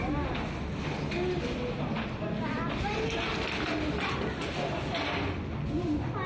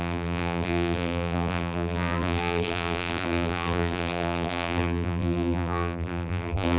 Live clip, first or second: first